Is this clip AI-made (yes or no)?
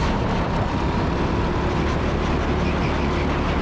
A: no